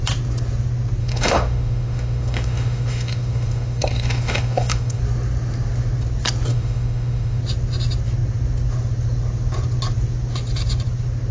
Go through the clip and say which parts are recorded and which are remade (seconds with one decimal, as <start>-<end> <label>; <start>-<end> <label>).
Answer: 0.0-1.0 recorded; 1.0-5.0 remade; 5.0-6.5 recorded; 6.5-7.4 remade; 7.4-11.3 recorded